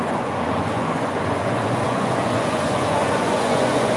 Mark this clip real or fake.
fake